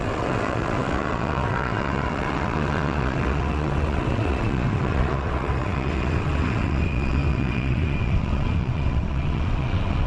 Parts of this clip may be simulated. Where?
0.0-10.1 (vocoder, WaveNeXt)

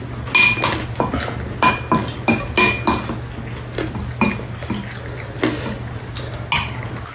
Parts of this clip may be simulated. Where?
none

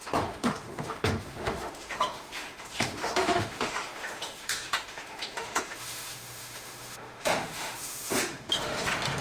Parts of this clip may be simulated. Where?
0.0-9.2 (autoencoder, DAC-VAE)

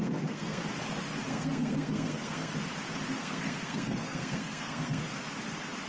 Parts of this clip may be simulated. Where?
0.0-0.6 (codec, SNAC); 1.3-2.5; 3.2-5.2

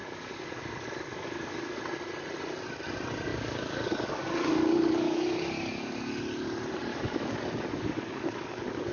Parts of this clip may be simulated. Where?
0.0-1.8 (codec, DAC); 3.3-6.1; 6.9-8.9

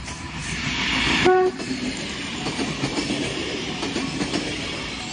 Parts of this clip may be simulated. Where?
0.0-5.1 (vocoder, BigVGAN v2)

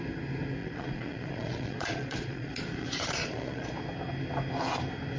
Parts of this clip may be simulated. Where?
0.6-3.7 (vocoder, Vocos)

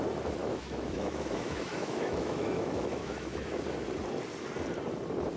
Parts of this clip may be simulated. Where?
0.4-3.6 (autoencoder, DAC-VAE)